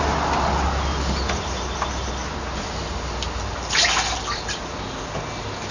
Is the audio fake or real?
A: real